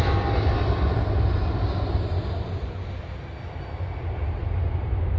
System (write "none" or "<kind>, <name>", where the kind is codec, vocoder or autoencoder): none